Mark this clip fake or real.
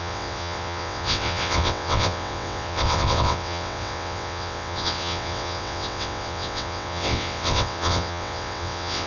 fake